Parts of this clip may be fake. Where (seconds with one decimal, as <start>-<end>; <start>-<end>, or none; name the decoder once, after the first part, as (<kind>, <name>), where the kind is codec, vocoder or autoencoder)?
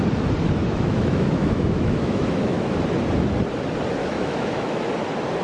0.6-2.8 (autoencoder, DAC-VAE); 4.0-4.9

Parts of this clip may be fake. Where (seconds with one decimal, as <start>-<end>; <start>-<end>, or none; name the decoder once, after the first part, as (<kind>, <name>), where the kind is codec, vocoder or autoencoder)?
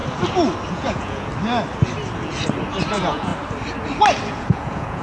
0.7-1.3 (vocoder, Vocos); 2.9-3.3; 4.3-5.0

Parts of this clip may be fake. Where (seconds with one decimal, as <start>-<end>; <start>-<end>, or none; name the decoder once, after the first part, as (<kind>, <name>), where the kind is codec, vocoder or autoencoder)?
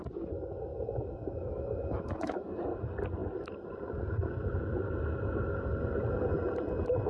0.7-2.6 (autoencoder, DAC-VAE)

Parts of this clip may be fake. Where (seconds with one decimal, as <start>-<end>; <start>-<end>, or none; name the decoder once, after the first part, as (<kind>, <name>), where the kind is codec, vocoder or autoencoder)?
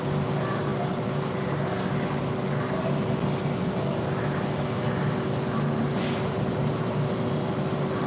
none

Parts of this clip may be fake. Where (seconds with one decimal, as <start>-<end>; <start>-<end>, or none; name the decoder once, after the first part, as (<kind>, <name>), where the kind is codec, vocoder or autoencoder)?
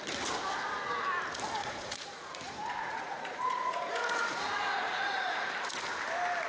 1.6-5.5 (vocoder, Vocos)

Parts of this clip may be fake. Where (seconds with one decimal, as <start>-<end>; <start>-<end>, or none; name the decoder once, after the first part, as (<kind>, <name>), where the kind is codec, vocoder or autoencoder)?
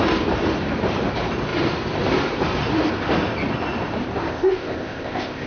4.3-5.5 (codec, ZipCodec)